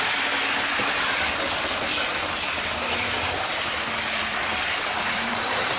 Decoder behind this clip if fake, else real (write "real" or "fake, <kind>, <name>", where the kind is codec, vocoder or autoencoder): fake, vocoder, BigVGAN v2